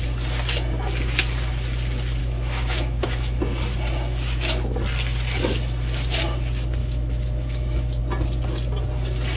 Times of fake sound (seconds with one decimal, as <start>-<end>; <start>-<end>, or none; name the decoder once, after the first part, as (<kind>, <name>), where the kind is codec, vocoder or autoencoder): 2.2-3.4 (autoencoder, DAC-VAE); 6.8-8.0